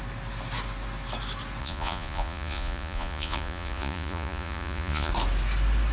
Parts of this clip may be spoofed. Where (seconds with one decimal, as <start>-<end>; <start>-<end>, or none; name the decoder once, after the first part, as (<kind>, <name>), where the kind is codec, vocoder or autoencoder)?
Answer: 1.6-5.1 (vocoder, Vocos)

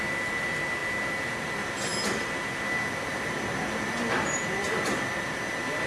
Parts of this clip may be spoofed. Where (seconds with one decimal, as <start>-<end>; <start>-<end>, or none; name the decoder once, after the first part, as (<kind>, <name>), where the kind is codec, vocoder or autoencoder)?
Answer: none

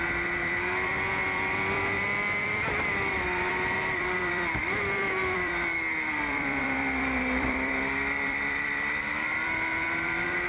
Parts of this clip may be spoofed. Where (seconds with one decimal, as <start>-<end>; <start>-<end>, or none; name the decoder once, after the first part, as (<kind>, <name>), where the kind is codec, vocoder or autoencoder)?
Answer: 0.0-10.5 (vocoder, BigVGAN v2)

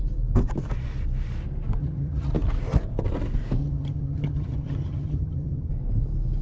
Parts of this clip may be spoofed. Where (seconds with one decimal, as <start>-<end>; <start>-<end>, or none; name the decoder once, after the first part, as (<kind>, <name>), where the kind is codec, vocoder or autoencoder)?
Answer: 1.8-2.3 (vocoder, HiFi-GAN); 3.6-5.7

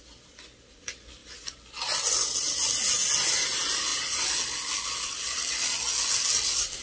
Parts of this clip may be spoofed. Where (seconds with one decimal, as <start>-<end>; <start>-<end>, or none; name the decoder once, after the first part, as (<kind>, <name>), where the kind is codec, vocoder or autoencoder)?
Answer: none

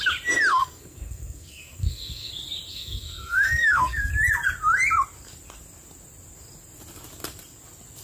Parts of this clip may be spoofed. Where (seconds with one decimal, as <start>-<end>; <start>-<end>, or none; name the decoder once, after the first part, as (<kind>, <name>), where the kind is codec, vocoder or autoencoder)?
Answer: 0.5-2.3 (codec, SNAC); 2.7-4.1

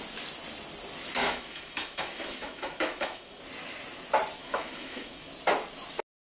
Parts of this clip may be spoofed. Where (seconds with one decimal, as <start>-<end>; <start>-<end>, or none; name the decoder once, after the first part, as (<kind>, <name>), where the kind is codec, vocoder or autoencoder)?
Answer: 1.2-3.4 (autoencoder, DAC-VAE); 4.4-5.3

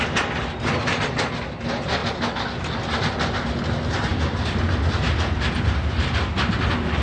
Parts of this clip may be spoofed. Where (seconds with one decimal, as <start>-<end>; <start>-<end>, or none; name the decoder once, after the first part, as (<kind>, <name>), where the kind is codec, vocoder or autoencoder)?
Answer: none